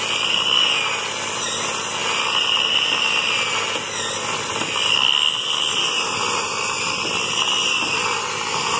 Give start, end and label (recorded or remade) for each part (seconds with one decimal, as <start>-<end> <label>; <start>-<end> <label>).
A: 0.0-8.8 recorded